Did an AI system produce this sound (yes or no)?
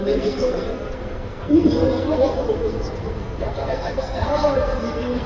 yes